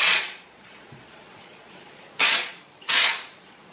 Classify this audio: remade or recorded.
remade